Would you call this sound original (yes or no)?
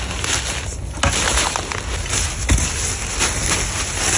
yes